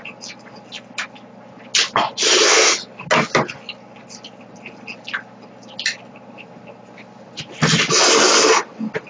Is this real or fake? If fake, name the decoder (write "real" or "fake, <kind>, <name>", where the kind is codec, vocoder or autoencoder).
real